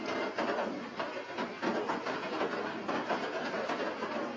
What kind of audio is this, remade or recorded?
recorded